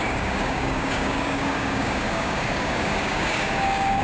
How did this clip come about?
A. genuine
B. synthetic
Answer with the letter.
B